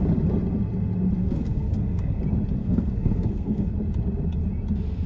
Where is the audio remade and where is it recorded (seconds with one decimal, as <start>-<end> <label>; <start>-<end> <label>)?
0.0-1.2 recorded; 1.2-2.2 remade; 2.2-2.6 recorded; 2.6-3.7 remade; 3.7-5.1 recorded